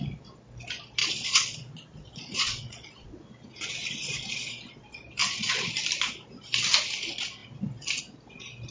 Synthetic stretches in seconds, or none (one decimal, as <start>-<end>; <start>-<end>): 1.0-3.7; 5.2-5.7